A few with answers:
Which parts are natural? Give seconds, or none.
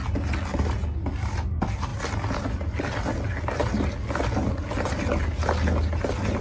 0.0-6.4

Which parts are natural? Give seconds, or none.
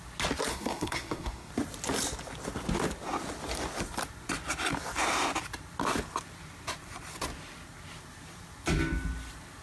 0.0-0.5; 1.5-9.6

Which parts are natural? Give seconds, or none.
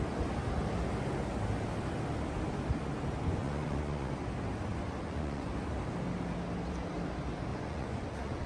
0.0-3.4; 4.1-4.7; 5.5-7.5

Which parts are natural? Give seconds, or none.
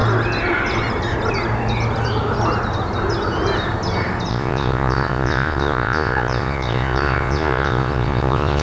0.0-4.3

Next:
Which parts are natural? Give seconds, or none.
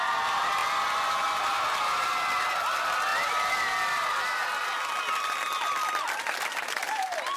0.0-7.4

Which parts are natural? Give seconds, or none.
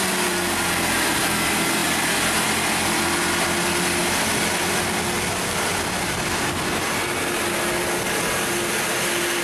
0.0-9.4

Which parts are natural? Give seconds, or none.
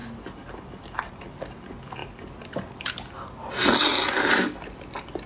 0.0-5.3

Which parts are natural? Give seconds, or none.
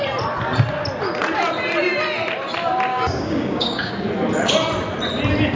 0.0-2.9; 3.9-5.5